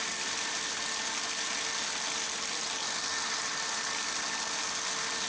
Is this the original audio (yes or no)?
yes